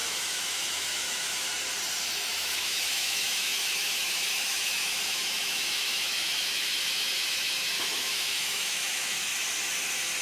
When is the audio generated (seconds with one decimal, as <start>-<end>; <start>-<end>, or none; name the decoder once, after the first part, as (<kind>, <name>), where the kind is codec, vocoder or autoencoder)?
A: 0.0-1.5 (autoencoder, DAC-VAE); 2.3-9.3